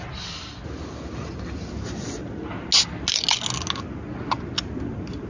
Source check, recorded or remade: recorded